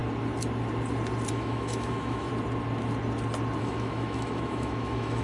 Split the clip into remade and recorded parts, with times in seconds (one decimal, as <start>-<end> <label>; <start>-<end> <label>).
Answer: 0.0-1.3 recorded; 1.3-2.3 remade; 2.3-3.6 recorded; 3.6-5.2 remade